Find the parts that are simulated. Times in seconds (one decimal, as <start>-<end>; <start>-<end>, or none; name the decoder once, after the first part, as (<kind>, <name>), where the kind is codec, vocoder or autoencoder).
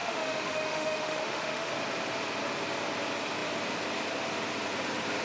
0.0-1.7 (autoencoder, DAC-VAE)